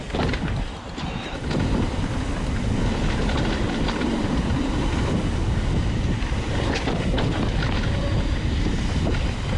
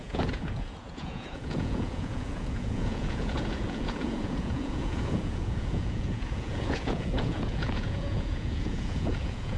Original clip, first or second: first